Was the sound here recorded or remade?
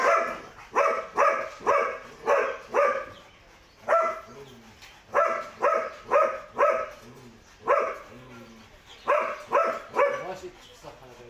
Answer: recorded